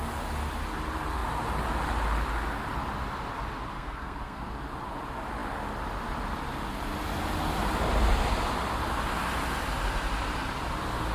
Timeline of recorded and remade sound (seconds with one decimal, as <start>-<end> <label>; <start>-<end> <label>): 0.0-3.7 recorded; 3.7-4.5 remade; 4.5-11.1 recorded